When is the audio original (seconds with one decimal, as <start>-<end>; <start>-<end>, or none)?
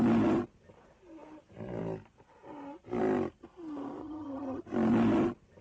0.0-4.0; 4.6-5.6